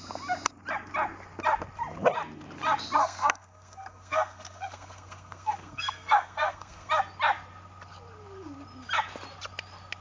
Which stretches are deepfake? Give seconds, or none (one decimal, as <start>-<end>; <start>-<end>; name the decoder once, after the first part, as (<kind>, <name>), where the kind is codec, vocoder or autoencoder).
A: 3.0-6.9 (codec, SNAC)